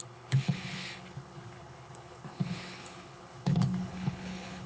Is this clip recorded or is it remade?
remade